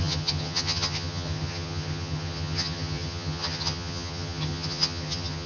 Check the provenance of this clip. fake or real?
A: fake